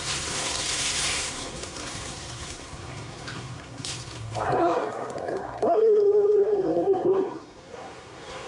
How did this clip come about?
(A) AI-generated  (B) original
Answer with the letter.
A